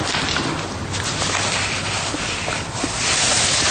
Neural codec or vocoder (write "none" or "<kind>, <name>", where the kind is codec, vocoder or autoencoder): none